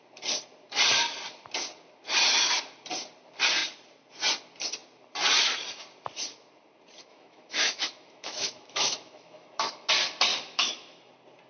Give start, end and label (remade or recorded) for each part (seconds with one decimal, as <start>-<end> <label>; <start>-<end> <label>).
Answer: 0.0-7.1 recorded; 7.1-9.9 remade; 9.9-10.3 recorded; 10.3-11.1 remade; 11.1-11.5 recorded